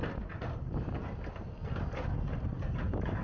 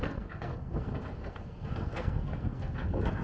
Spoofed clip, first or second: second